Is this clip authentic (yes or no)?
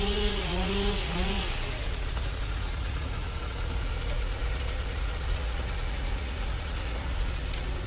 no